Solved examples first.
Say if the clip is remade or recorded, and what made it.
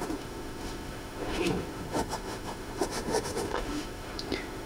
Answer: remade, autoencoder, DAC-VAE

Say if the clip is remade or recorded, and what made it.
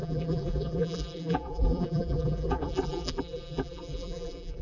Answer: remade, vocoder, BigVGAN v2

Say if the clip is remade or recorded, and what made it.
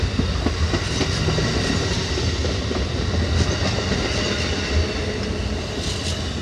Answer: recorded